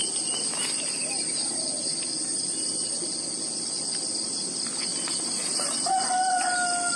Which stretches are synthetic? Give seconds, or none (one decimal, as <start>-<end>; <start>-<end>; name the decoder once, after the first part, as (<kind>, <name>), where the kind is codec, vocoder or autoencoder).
0.0-3.0 (vocoder, BigVGAN v2); 4.9-5.9